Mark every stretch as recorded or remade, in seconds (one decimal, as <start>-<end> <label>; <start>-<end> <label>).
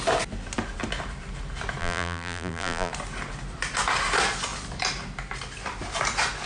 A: 0.0-1.8 recorded; 1.8-2.9 remade; 2.9-6.5 recorded